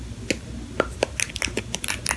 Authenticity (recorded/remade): recorded